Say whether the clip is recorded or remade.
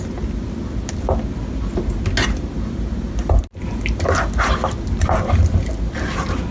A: recorded